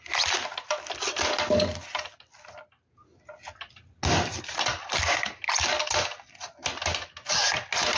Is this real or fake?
real